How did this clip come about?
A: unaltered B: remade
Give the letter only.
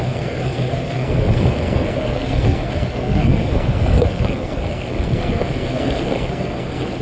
B